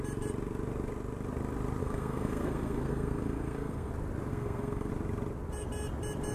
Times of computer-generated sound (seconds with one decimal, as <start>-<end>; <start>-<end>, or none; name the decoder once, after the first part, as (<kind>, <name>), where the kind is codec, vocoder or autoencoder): 1.8-3.9 (codec, SNAC); 4.3-4.9